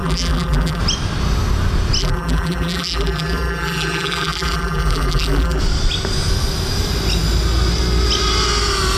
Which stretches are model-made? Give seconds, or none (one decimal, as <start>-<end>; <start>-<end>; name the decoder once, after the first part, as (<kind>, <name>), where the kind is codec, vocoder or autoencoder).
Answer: 0.0-0.8 (vocoder, BigVGAN v2); 2.0-5.6